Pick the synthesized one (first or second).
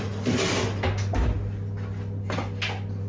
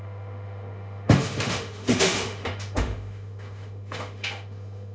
second